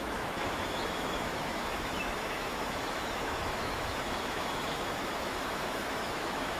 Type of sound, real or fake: fake